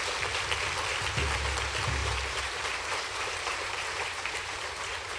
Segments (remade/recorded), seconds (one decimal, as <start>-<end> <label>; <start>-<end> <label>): 0.0-2.0 recorded; 2.0-5.2 remade